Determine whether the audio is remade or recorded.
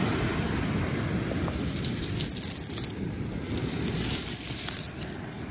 recorded